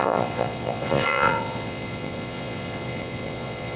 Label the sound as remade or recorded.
remade